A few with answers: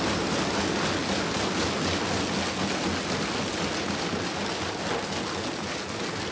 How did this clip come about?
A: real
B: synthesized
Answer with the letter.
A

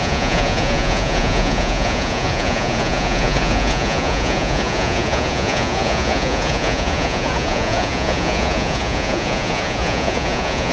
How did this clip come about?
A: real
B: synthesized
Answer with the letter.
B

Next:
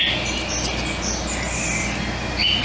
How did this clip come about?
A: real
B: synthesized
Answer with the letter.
A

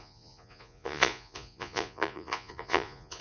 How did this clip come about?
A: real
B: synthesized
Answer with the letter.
B